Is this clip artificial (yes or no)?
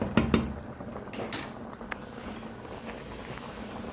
no